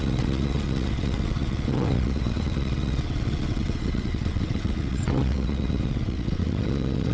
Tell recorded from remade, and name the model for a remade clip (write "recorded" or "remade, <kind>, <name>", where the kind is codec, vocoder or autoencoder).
remade, vocoder, WaveNeXt